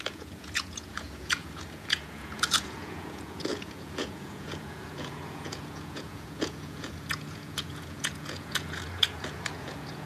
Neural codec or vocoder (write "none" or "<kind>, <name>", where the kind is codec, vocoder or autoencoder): vocoder, Vocos